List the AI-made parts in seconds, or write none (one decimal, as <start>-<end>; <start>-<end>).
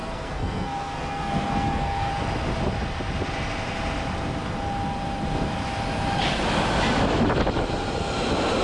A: 0.0-2.1